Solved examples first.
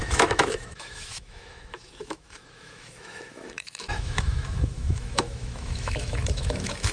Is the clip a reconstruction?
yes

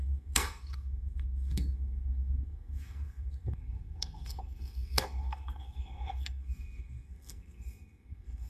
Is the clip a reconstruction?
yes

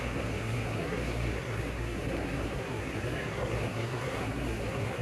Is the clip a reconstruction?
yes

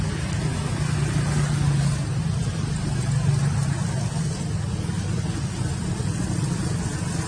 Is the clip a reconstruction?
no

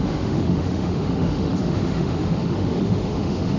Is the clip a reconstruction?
yes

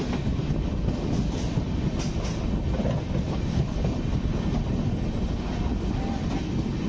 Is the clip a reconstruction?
no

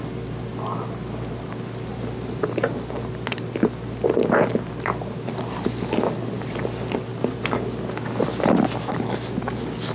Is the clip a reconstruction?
no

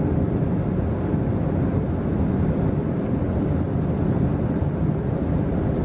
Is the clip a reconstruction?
no